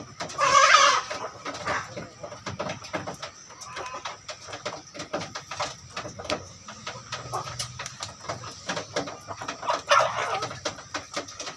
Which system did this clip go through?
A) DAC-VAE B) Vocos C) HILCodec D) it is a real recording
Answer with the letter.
D